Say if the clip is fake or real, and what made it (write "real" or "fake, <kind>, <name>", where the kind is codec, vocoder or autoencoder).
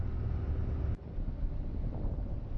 real